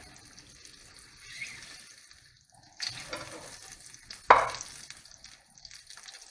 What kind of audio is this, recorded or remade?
recorded